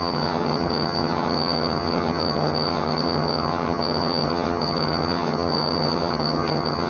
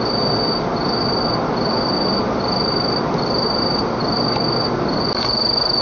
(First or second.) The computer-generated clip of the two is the first